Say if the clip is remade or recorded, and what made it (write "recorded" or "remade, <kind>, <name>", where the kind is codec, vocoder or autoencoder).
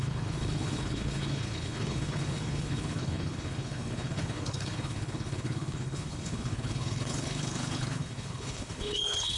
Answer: remade, codec, HILCodec